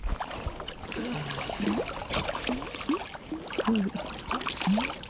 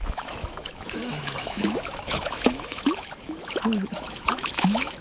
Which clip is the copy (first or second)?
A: second